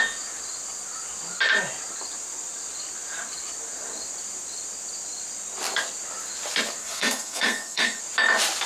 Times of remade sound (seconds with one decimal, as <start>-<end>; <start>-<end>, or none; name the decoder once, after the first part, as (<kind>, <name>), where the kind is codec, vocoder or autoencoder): 6.8-8.0 (codec, SNAC)